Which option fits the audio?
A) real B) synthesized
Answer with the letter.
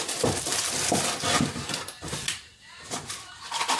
B